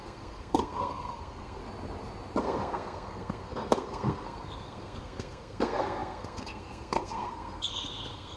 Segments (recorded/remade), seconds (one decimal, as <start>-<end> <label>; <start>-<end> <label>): 0.0-1.6 remade; 1.6-2.4 recorded; 2.4-8.4 remade